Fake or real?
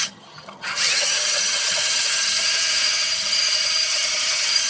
fake